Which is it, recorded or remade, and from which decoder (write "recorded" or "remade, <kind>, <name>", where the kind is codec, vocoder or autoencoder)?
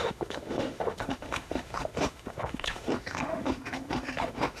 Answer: remade, autoencoder, DAC-VAE